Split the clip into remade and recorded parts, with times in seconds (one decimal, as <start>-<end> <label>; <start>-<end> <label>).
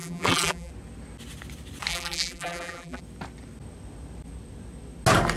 0.0-0.7 remade; 0.7-1.9 recorded; 1.9-3.0 remade; 3.0-5.4 recorded